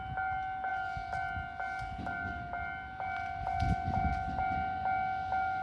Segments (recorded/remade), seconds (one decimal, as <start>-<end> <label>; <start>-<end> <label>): 0.0-5.6 recorded

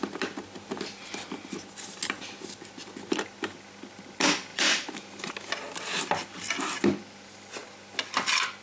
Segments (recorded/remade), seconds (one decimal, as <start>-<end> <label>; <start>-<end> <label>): 0.0-4.5 recorded; 4.5-5.3 remade; 5.3-8.6 recorded

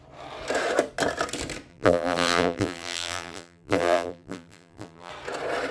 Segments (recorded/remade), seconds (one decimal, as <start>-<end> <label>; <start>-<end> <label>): 0.0-1.7 recorded; 1.7-5.1 remade; 5.1-5.7 recorded

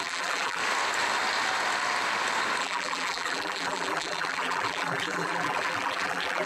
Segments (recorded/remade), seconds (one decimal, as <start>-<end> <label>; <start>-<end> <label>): 0.0-0.6 remade; 0.6-2.6 recorded; 2.6-6.5 remade